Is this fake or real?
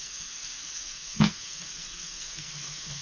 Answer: fake